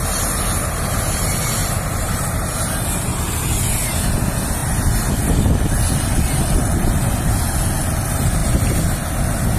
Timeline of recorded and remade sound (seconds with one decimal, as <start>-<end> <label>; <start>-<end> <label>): 0.0-1.6 recorded; 1.6-2.5 remade; 2.5-4.6 recorded; 4.6-7.1 remade; 7.1-8.4 recorded; 8.4-9.2 remade; 9.2-9.6 recorded